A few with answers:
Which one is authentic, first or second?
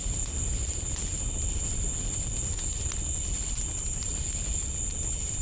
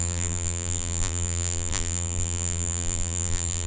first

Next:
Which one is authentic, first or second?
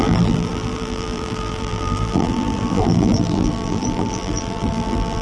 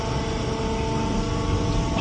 second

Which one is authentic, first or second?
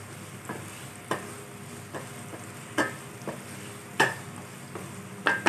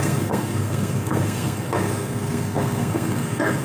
first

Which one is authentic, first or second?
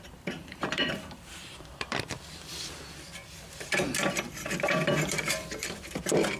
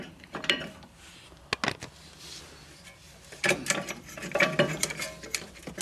second